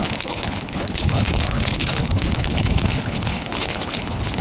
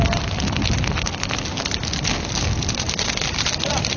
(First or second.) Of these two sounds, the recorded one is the second